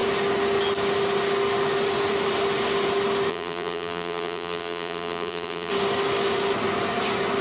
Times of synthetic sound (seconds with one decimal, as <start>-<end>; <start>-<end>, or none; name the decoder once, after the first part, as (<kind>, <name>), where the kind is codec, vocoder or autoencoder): 3.3-5.7 (vocoder, BigVGAN v2)